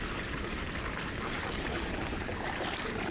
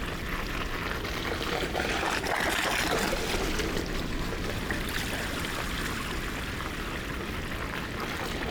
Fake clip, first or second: first